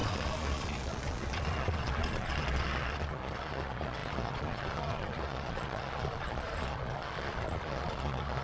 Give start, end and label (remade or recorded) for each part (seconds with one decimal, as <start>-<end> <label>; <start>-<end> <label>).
0.0-8.4 remade

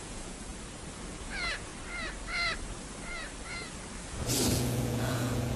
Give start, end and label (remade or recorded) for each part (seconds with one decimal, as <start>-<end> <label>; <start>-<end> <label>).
0.0-0.5 remade; 0.5-1.1 recorded; 1.1-1.7 remade; 1.7-4.5 recorded; 4.5-5.6 remade